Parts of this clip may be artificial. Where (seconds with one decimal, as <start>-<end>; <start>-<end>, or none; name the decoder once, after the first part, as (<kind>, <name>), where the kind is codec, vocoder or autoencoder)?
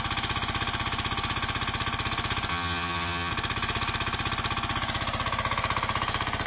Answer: 2.5-3.3 (vocoder, HiFi-GAN)